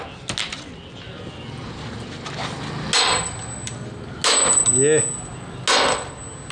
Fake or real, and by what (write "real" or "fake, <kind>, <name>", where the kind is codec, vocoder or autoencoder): real